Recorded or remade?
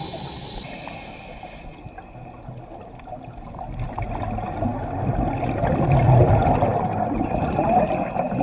recorded